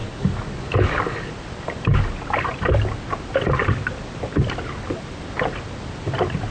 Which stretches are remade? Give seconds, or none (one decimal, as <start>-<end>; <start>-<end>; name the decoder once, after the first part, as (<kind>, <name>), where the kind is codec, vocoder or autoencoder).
0.0-1.3 (codec, DAC)